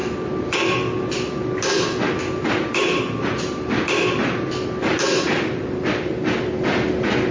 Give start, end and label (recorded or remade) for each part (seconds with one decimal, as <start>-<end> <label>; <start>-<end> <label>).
0.0-7.3 recorded